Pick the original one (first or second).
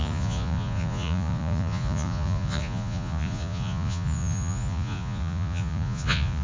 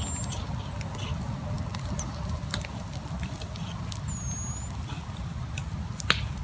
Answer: second